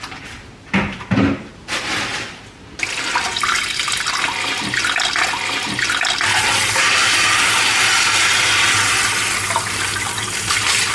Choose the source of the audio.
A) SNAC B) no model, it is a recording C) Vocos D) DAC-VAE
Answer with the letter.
B